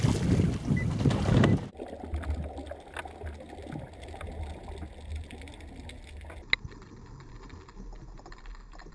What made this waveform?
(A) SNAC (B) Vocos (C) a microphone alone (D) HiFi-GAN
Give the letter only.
C